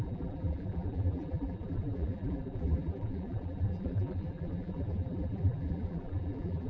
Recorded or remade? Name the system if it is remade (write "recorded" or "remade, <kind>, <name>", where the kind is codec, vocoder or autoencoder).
remade, vocoder, BigVGAN v2